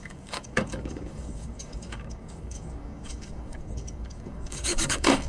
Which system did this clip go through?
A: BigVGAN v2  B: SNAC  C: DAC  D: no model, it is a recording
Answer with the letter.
C